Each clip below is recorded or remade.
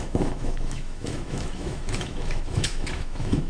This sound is remade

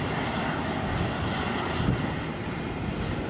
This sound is recorded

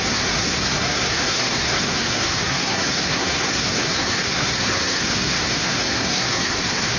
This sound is remade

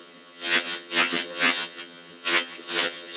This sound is remade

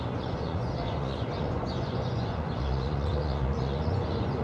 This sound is remade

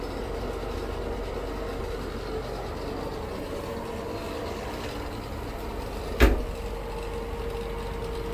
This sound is recorded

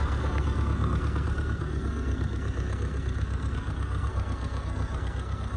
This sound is remade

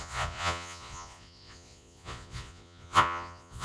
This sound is remade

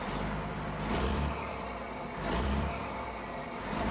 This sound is remade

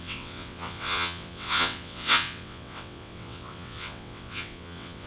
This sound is remade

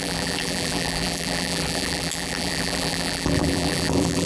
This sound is remade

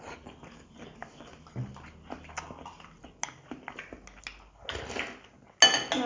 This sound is recorded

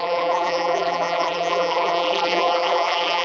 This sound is remade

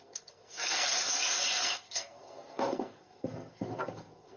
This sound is remade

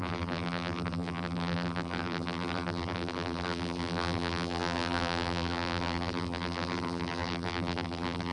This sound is remade